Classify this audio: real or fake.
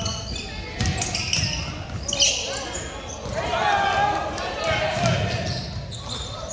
real